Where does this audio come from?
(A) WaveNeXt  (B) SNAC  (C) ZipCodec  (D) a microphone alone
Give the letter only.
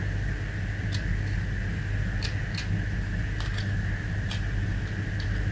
D